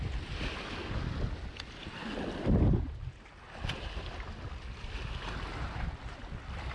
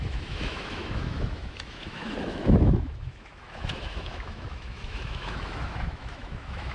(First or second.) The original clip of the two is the first